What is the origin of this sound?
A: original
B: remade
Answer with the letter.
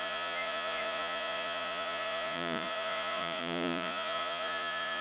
B